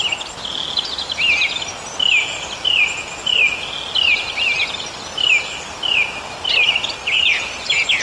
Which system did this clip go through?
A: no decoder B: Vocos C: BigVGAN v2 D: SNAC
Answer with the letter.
A